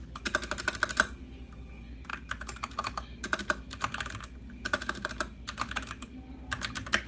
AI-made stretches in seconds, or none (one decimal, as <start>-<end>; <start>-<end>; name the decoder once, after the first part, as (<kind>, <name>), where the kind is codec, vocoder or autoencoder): 6.0-6.6 (vocoder, BigVGAN v2)